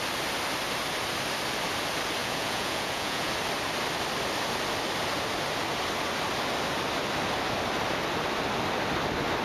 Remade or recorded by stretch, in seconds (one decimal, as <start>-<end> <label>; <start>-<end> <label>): 0.0-2.2 recorded; 2.2-3.3 remade; 3.3-9.4 recorded